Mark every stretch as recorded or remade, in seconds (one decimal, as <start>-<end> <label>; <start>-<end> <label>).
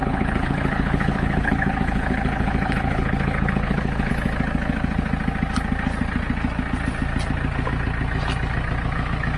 0.0-4.1 remade; 4.1-9.4 recorded